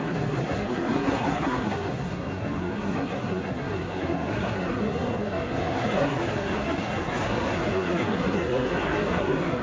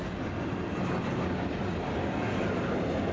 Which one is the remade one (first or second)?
first